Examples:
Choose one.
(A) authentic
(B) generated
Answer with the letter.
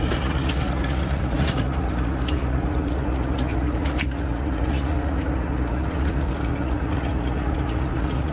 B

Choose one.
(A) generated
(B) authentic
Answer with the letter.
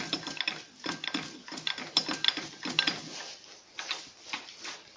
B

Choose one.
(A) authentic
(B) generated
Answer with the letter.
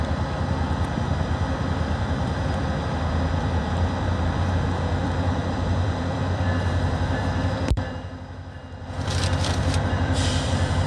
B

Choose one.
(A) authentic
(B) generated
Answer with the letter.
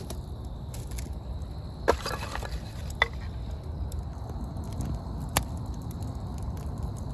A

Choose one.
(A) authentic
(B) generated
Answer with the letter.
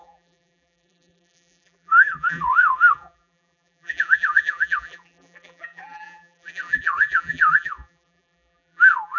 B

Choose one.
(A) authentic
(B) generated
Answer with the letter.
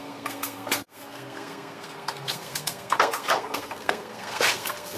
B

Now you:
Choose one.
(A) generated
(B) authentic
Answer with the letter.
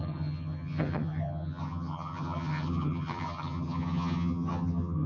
A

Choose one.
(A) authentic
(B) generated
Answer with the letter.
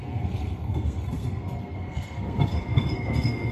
B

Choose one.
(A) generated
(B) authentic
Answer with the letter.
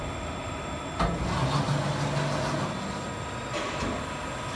B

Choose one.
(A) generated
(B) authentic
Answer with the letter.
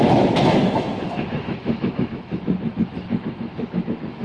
A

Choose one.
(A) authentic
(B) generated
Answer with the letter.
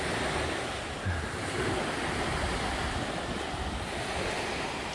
A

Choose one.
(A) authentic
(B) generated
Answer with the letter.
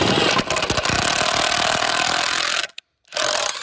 A